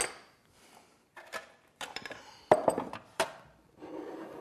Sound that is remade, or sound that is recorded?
recorded